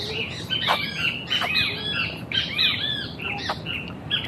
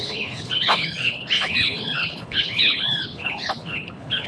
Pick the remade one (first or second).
second